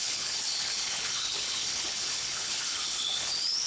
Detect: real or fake fake